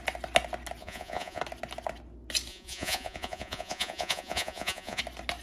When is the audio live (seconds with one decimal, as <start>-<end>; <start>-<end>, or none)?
0.0-0.8; 1.4-2.5; 5.0-5.4